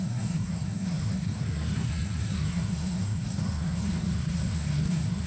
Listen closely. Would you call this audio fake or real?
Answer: fake